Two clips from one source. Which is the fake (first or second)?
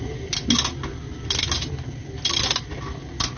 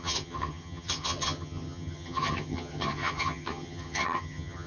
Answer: second